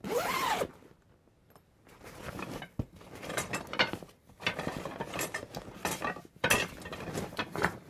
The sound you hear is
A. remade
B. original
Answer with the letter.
B